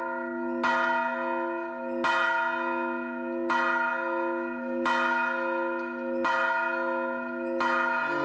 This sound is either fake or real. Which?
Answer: real